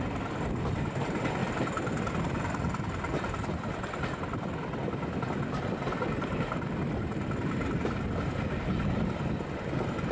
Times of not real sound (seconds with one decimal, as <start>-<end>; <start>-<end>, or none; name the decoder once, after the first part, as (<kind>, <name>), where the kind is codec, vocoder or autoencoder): none

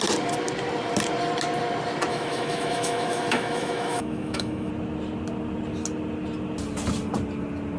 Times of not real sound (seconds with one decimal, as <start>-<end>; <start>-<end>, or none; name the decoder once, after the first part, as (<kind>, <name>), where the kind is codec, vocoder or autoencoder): 2.1-4.7 (autoencoder, DAC-VAE)

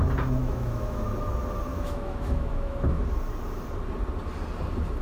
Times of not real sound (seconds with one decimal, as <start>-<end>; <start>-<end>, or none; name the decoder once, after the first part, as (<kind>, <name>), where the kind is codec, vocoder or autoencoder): 0.4-1.1 (autoencoder, DAC-VAE); 1.7-3.0